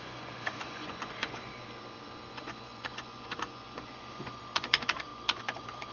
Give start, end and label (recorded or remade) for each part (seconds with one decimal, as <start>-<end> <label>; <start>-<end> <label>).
0.0-1.5 remade; 1.5-2.3 recorded; 2.3-5.9 remade